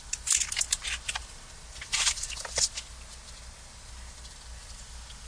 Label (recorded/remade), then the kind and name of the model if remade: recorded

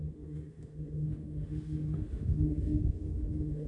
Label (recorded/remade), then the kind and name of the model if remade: remade, autoencoder, DAC-VAE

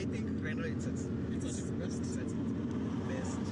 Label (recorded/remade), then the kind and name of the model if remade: recorded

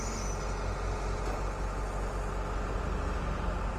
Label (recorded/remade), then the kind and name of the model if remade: recorded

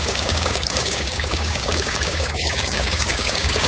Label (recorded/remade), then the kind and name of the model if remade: remade, codec, DAC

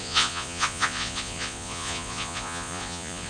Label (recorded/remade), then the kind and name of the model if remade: remade, vocoder, Vocos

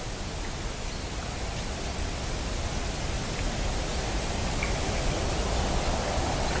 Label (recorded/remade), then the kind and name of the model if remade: recorded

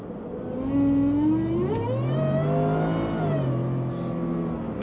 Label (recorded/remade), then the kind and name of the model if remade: recorded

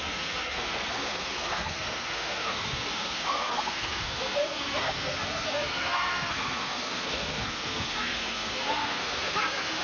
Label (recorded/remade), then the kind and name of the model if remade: remade, codec, SNAC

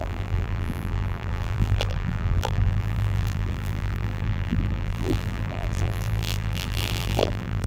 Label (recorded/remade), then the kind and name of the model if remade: remade, vocoder, BigVGAN v2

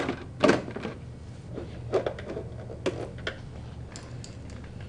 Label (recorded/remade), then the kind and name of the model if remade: recorded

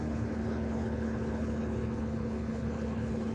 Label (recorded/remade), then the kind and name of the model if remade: remade, codec, HILCodec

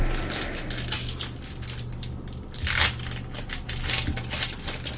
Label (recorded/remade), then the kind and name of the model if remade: recorded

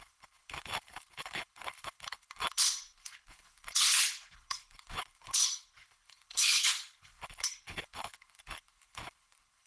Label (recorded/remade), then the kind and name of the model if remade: remade, codec, HILCodec